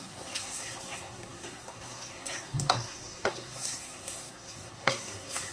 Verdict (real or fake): fake